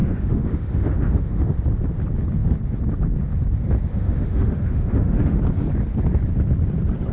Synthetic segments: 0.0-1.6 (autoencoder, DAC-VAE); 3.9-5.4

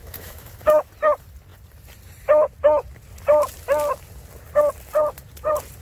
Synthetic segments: 0.0-0.9 (autoencoder, DAC-VAE)

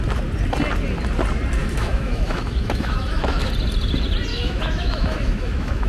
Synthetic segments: 1.6-3.5 (autoencoder, DAC-VAE); 4.3-5.9